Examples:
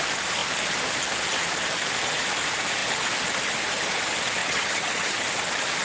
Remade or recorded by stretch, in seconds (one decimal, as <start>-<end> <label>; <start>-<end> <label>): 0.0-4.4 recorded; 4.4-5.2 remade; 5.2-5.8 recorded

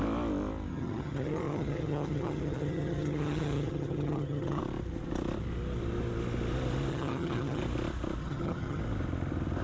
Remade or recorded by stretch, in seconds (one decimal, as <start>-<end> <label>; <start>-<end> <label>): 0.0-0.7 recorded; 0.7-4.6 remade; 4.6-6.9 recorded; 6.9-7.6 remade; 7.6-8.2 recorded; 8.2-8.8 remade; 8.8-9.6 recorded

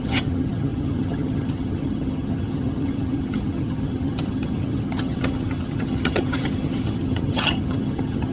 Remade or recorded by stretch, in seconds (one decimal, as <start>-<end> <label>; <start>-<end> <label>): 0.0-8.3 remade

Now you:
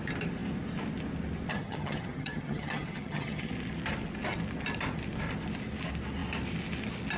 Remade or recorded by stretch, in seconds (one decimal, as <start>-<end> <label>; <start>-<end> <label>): 0.0-1.5 recorded; 1.5-3.5 remade; 3.5-7.2 recorded

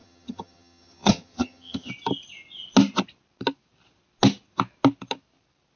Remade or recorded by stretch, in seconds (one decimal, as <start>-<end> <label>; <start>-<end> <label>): 0.0-1.9 remade; 1.9-5.8 recorded

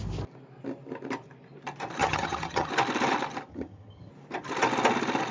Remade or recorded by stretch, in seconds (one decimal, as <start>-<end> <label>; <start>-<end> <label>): 0.0-2.0 recorded; 2.0-2.7 remade; 2.7-3.5 recorded; 3.5-4.1 remade; 4.1-5.3 recorded

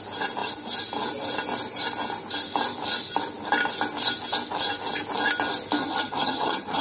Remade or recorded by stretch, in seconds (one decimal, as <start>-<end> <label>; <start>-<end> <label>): 0.0-5.8 recorded; 5.8-6.8 remade

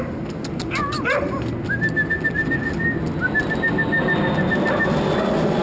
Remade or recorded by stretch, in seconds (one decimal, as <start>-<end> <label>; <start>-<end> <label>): 0.0-5.6 recorded